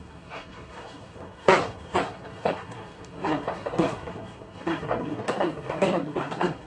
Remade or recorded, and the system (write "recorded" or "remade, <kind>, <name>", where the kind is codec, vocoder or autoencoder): remade, codec, SNAC